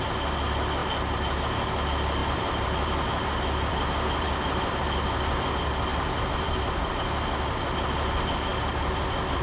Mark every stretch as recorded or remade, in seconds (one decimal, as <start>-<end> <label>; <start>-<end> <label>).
0.0-0.8 recorded; 0.8-1.4 remade; 1.4-2.2 recorded; 2.2-4.8 remade; 4.8-5.9 recorded; 5.9-6.9 remade; 6.9-9.4 recorded

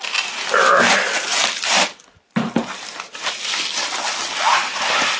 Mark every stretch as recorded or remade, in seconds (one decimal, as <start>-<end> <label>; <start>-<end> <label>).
0.0-5.2 recorded

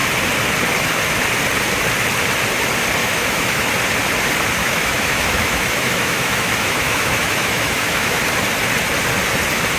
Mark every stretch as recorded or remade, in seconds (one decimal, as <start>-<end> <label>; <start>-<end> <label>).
0.0-3.0 recorded; 3.0-3.7 remade; 3.7-4.6 recorded; 4.6-8.2 remade; 8.2-9.8 recorded

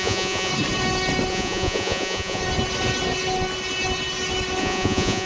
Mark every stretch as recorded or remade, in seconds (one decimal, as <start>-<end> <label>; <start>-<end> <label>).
0.0-0.5 remade; 0.5-1.3 recorded; 1.3-2.4 remade; 2.4-4.6 recorded; 4.6-5.3 remade